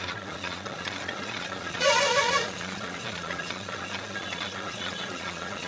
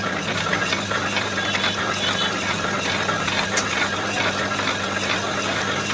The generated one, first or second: first